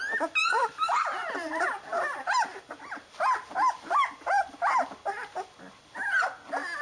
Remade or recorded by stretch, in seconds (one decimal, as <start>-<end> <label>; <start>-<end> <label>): 0.0-0.4 recorded; 0.4-2.6 remade; 2.6-6.8 recorded